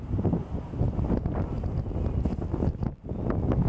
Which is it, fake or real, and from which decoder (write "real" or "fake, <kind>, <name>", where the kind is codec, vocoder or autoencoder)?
real